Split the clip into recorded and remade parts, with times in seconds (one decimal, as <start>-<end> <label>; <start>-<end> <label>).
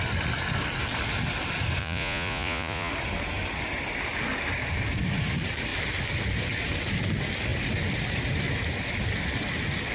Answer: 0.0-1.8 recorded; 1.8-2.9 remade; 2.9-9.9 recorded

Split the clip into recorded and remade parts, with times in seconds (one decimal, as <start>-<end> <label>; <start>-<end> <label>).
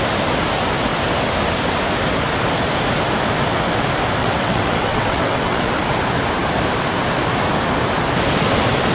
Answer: 0.0-4.2 recorded; 4.2-5.7 remade; 5.7-8.9 recorded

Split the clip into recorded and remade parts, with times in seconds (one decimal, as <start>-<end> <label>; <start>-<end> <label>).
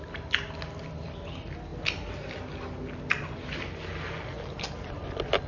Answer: 0.0-5.5 recorded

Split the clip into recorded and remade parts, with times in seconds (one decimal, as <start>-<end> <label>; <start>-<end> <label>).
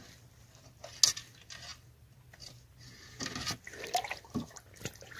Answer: 0.0-5.2 recorded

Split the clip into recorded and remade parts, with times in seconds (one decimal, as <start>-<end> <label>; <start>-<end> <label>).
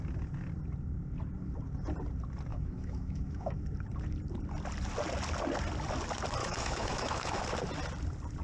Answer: 0.0-2.5 recorded; 2.5-3.6 remade; 3.6-6.4 recorded; 6.4-7.4 remade; 7.4-8.4 recorded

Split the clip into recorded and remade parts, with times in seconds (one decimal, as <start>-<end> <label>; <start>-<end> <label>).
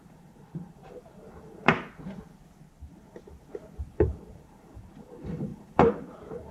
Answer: 0.0-1.7 remade; 1.7-3.8 recorded; 3.8-6.5 remade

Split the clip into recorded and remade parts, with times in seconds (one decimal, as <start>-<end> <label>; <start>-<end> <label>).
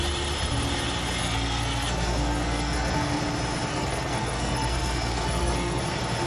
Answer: 0.0-1.2 recorded; 1.2-3.2 remade; 3.2-3.7 recorded; 3.7-5.8 remade; 5.8-6.3 recorded